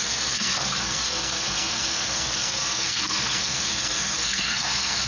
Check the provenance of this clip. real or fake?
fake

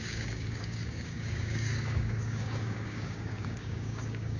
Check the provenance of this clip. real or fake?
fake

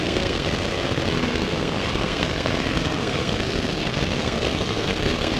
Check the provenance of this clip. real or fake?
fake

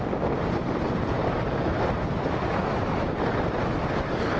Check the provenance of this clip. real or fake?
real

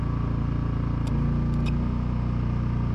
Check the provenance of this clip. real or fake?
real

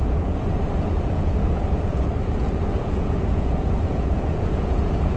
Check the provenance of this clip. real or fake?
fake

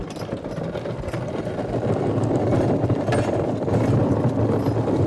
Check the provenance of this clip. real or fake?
real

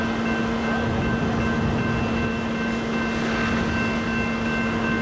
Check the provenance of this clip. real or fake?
real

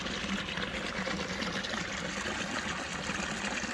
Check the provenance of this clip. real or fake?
real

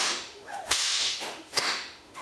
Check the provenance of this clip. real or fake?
fake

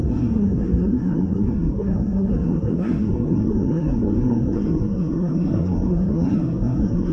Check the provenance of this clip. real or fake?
fake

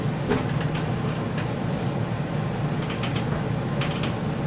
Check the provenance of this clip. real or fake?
real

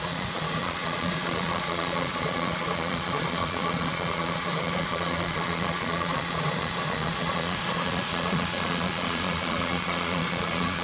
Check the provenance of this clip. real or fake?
fake